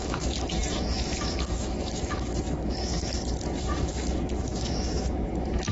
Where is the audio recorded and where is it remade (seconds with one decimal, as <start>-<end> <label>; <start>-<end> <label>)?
0.0-5.7 remade